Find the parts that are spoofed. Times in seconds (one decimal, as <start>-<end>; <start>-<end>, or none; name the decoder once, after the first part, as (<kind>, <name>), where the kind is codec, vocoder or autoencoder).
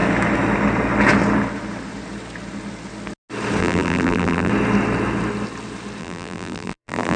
3.6-4.5 (vocoder, BigVGAN v2); 6.0-7.2